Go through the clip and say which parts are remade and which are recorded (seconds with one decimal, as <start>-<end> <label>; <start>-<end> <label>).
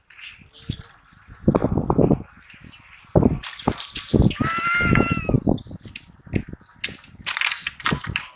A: 0.0-8.4 recorded